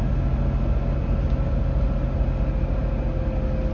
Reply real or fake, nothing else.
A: real